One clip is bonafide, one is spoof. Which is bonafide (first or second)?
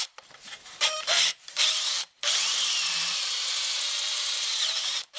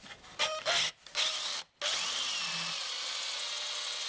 second